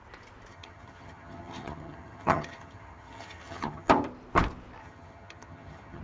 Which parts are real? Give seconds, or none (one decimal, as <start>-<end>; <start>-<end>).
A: 0.0-0.5; 3.9-4.8